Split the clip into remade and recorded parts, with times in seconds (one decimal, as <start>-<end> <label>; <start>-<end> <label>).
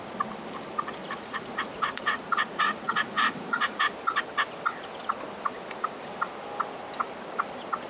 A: 0.0-1.0 recorded; 1.0-3.8 remade; 3.8-7.9 recorded